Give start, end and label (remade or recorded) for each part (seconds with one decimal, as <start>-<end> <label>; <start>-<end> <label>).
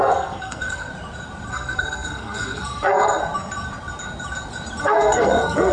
0.0-0.9 remade; 0.9-1.5 recorded; 1.5-3.2 remade; 3.2-4.8 recorded; 4.8-5.7 remade